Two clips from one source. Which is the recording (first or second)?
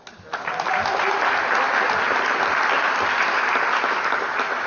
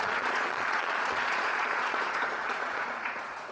first